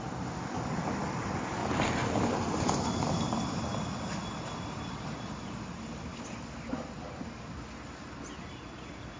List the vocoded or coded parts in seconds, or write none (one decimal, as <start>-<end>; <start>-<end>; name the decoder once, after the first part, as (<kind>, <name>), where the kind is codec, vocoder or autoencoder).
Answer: 0.0-3.7 (vocoder, BigVGAN v2); 4.3-6.1; 8.5-9.2